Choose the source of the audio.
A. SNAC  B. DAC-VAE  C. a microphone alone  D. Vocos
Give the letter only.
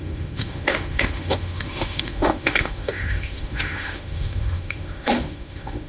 B